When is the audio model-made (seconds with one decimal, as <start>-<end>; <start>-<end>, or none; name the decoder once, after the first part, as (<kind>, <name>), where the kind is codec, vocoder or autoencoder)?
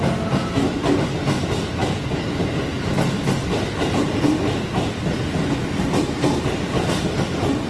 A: none